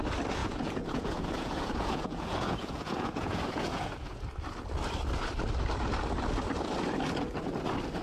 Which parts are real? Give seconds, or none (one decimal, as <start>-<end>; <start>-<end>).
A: 0.0-0.4; 4.2-8.0